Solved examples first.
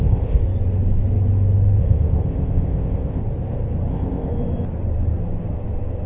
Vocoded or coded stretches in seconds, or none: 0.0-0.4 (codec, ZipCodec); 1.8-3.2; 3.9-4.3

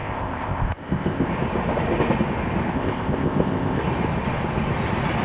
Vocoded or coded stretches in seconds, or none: 0.0-1.3 (codec, ZipCodec); 2.7-3.8

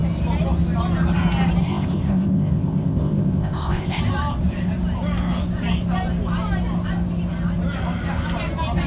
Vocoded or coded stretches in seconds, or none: 1.6-4.0 (codec, ZipCodec)

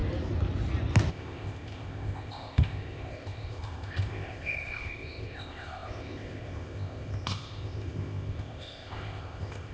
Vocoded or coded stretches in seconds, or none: 1.1-9.7 (codec, ZipCodec)

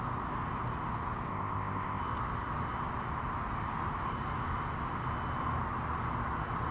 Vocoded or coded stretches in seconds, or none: 1.3-2.0 (codec, ZipCodec)

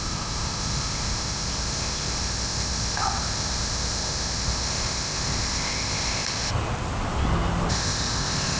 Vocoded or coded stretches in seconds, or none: 0.0-6.5 (codec, ZipCodec); 7.7-8.6

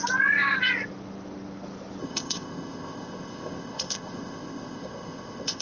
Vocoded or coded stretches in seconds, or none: 2.0-5.6 (codec, ZipCodec)

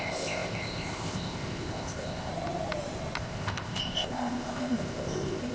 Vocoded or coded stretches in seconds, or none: 0.0-2.3 (codec, ZipCodec); 3.2-5.5